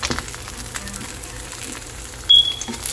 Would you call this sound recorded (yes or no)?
yes